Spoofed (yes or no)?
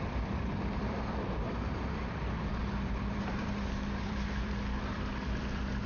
yes